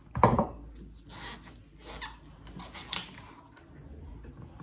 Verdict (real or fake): real